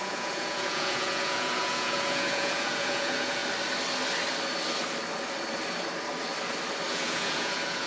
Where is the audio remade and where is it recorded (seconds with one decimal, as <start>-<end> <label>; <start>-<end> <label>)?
0.0-3.4 remade; 3.4-6.9 recorded; 6.9-7.9 remade